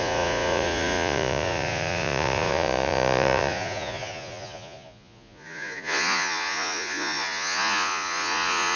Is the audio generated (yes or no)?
yes